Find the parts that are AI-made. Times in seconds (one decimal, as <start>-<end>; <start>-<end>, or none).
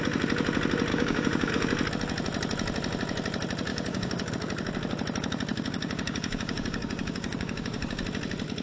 0.9-1.5; 3.7-4.3; 5.5-8.0